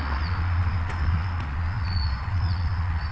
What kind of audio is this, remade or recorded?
remade